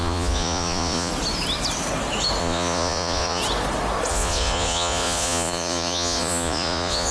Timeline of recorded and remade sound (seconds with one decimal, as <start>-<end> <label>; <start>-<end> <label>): 0.0-1.1 remade; 1.1-2.4 recorded; 2.4-3.4 remade; 3.4-4.1 recorded; 4.1-7.1 remade